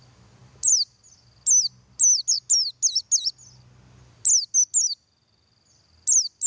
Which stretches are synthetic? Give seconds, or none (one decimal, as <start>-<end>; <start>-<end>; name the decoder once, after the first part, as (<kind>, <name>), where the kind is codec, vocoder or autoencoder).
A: none